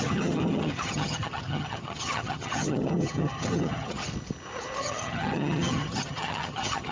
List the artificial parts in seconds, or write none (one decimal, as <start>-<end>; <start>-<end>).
0.0-4.0; 4.8-6.9